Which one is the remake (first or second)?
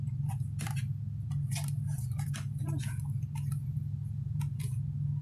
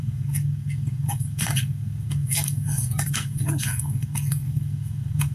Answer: second